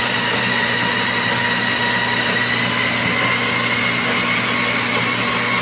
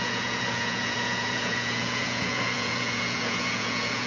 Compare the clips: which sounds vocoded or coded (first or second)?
second